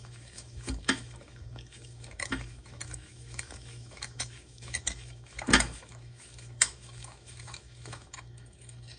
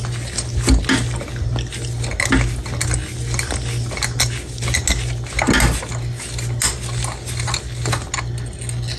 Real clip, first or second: second